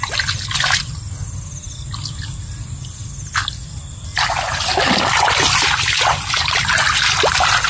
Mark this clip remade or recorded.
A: recorded